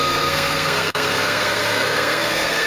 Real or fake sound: fake